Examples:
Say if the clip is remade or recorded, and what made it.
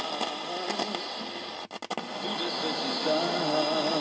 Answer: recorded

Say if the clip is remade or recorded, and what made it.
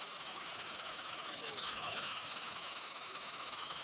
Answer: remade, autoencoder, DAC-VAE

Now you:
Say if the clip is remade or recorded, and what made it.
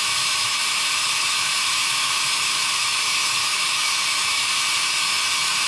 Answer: remade, autoencoder, DAC-VAE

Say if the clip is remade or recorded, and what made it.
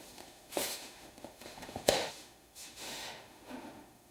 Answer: remade, autoencoder, DAC-VAE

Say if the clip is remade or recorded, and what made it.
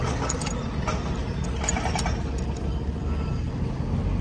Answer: recorded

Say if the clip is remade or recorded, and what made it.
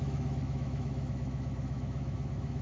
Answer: remade, autoencoder, DAC-VAE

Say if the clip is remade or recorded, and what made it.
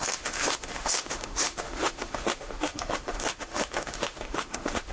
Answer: remade, autoencoder, DAC-VAE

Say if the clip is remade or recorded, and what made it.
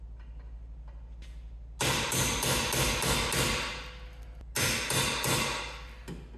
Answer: recorded